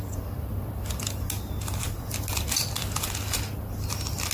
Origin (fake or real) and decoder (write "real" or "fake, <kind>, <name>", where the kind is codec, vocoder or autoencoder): fake, vocoder, BigVGAN v2